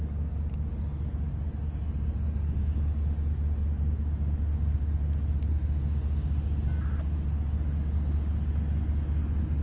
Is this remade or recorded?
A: recorded